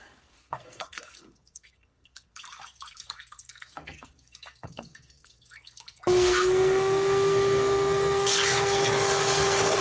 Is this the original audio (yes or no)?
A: no